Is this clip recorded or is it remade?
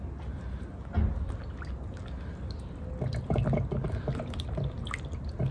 recorded